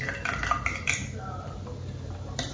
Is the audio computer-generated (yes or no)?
no